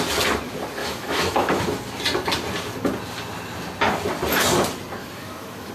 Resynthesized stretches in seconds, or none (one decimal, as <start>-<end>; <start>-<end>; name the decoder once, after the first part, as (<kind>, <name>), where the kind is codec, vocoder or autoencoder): 0.8-1.6 (autoencoder, DAC-VAE); 5.0-5.7

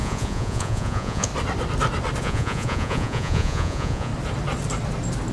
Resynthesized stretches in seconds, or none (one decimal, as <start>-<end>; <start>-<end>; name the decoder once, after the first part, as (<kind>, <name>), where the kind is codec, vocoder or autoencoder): 0.0-1.3 (vocoder, Vocos); 2.2-4.1

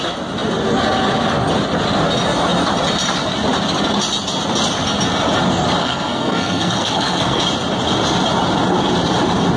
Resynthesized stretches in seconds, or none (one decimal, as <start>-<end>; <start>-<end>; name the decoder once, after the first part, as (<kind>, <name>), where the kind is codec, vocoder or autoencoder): 5.8-7.4 (codec, SNAC)

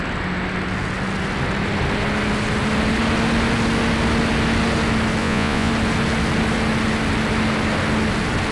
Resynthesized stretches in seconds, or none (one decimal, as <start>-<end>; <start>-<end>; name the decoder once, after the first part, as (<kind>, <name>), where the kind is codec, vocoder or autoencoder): 5.2-5.7 (vocoder, Vocos)